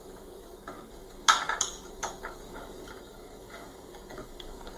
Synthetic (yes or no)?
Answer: yes